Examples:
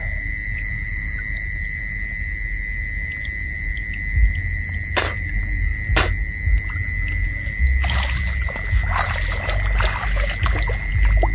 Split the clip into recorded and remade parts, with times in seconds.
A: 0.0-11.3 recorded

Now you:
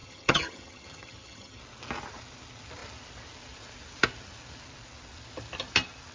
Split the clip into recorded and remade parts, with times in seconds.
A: 0.0-1.6 remade; 1.6-6.1 recorded

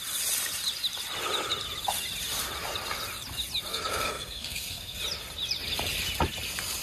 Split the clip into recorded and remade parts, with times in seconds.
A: 0.0-3.7 recorded; 3.7-5.0 remade; 5.0-6.8 recorded

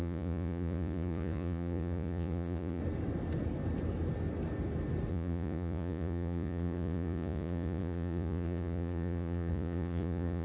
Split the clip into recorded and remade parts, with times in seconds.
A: 0.0-2.8 remade; 2.8-5.1 recorded; 5.1-10.4 remade

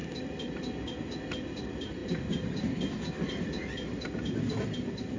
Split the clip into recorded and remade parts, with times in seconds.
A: 0.0-5.2 recorded

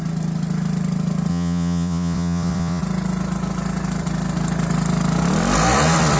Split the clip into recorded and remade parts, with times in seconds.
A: 0.0-1.3 recorded; 1.3-2.8 remade; 2.8-6.2 recorded